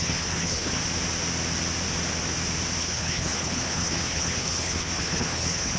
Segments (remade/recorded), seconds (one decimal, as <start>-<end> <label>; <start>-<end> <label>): 0.0-0.8 remade; 0.8-2.8 recorded; 2.8-5.8 remade